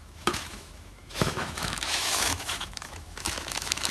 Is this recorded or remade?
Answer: remade